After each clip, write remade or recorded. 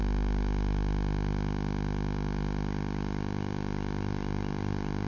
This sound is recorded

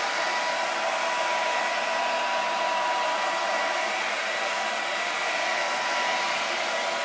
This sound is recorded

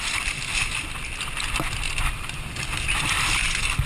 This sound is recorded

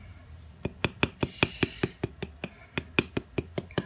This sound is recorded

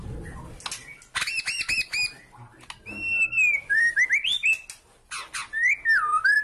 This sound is recorded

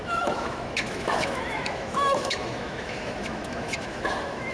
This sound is remade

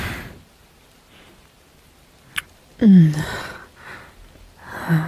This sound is recorded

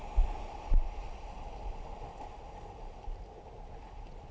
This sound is recorded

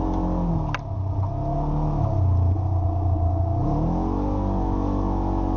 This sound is recorded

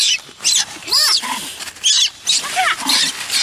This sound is recorded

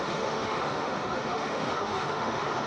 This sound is remade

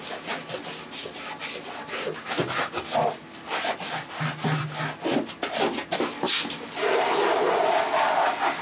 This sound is recorded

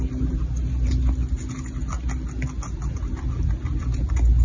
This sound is recorded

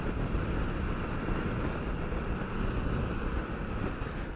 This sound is recorded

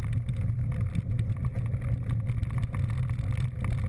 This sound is recorded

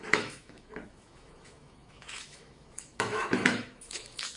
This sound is remade